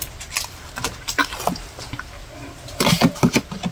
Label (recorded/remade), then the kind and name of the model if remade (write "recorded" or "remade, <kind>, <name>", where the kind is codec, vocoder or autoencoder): recorded